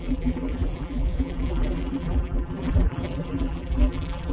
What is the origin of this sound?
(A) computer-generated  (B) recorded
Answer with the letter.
A